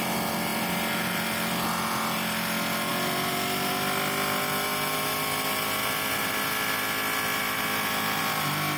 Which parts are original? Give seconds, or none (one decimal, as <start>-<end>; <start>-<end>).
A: 0.0-8.8